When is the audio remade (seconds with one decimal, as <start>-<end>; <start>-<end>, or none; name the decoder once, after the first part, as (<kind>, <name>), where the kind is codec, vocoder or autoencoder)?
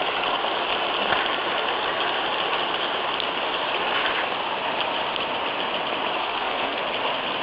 6.2-6.8 (codec, SNAC)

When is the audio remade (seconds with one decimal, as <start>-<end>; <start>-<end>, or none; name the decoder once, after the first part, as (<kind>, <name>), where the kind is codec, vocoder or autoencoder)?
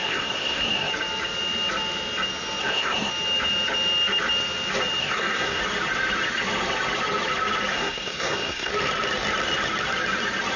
0.0-0.9 (codec, SNAC); 2.6-3.1; 5.0-5.6; 7.7-8.7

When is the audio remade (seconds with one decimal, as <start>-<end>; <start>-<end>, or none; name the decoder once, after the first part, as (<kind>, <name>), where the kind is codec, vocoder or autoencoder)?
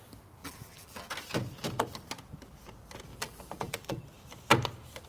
0.4-1.1 (vocoder, BigVGAN v2); 3.1-4.0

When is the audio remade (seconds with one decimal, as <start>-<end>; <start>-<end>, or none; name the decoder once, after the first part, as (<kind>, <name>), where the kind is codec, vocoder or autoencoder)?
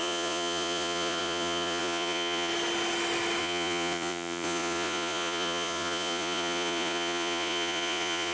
0.0-2.5 (vocoder, Vocos); 3.4-8.3